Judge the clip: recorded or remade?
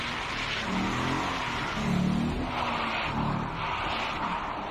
recorded